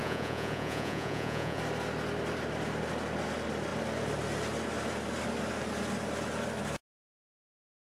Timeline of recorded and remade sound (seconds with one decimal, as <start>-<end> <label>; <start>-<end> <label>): 0.0-1.6 remade; 1.6-7.9 recorded

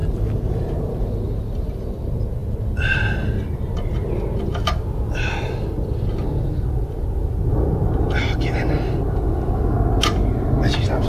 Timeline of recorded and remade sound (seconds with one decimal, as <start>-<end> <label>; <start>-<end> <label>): 0.0-11.1 recorded

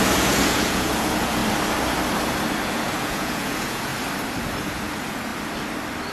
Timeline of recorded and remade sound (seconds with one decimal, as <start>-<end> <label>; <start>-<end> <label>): 0.0-1.4 remade; 1.4-2.7 recorded; 2.7-3.9 remade; 3.9-4.6 recorded; 4.6-5.3 remade; 5.3-6.1 recorded

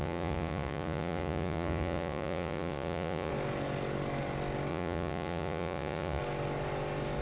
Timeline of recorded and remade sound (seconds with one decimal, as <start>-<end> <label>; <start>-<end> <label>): 0.0-3.3 remade; 3.3-4.7 recorded; 4.7-6.2 remade; 6.2-7.2 recorded

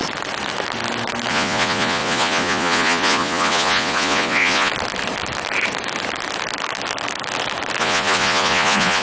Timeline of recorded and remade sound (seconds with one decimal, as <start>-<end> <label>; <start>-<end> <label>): 0.0-1.3 recorded; 1.3-4.7 remade; 4.7-7.8 recorded; 7.8-9.0 remade

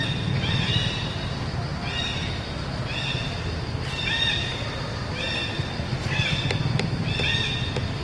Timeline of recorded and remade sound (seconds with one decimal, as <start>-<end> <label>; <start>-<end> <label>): 0.0-8.0 recorded

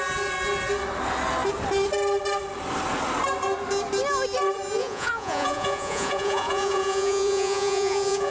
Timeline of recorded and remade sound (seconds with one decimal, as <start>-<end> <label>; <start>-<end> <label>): 0.0-4.8 recorded; 4.8-8.3 remade

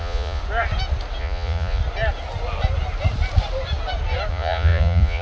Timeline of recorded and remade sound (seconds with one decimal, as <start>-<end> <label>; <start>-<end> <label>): 0.0-0.4 remade; 0.4-1.2 recorded; 1.2-1.8 remade; 1.8-4.3 recorded; 4.3-5.2 remade